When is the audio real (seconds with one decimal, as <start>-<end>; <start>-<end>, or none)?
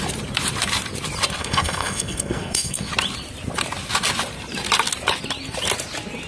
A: 0.0-1.4; 2.9-6.3